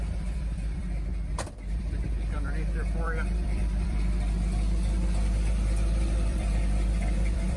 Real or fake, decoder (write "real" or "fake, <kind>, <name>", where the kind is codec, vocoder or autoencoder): fake, vocoder, BigVGAN v2